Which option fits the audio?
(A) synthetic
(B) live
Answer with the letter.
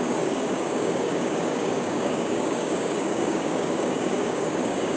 A